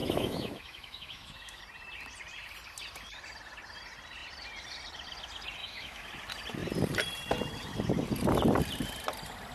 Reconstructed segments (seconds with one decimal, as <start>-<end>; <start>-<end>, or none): 0.0-1.6; 5.6-6.1